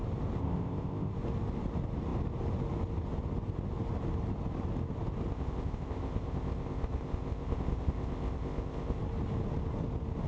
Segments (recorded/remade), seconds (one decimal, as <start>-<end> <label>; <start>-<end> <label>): 0.0-0.4 recorded; 0.4-1.1 remade; 1.1-5.3 recorded; 5.3-9.0 remade; 9.0-10.3 recorded